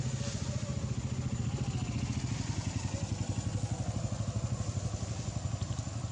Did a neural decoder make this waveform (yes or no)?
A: no